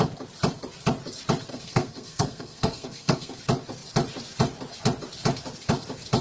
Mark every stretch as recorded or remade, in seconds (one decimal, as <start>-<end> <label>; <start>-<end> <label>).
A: 0.0-1.5 recorded; 1.5-3.4 remade; 3.4-6.2 recorded